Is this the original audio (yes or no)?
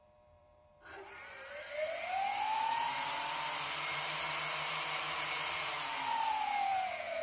no